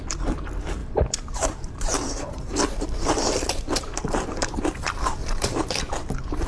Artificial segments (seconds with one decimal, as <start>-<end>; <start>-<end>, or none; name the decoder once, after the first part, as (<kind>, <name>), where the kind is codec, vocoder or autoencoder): 0.8-4.7 (vocoder, BigVGAN v2); 5.2-5.7